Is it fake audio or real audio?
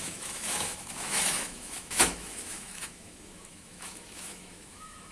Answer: fake